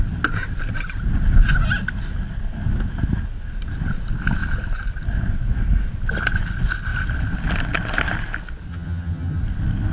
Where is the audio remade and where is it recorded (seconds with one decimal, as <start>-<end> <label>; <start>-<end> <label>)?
0.0-8.7 recorded; 8.7-9.4 remade; 9.4-9.9 recorded